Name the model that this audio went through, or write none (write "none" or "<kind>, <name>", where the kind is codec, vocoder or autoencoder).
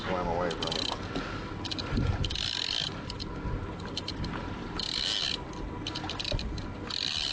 none